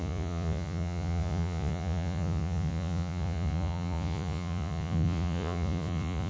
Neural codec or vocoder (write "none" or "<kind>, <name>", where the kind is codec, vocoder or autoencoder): vocoder, Vocos